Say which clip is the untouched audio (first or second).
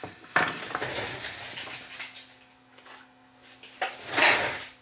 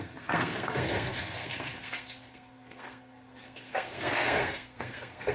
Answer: first